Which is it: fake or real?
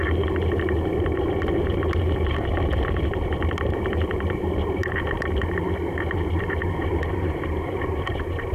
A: fake